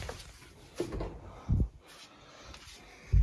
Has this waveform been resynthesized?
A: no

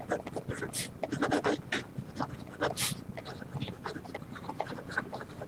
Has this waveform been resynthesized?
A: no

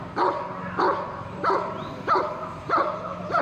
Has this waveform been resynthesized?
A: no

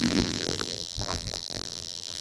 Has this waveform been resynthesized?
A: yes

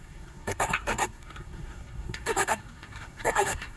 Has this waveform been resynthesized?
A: yes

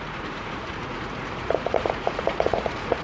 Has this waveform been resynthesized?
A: yes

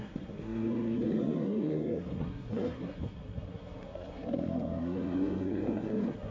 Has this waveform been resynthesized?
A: yes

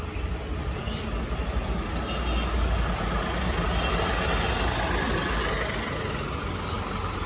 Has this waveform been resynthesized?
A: no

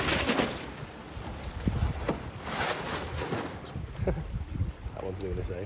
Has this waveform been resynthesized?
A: no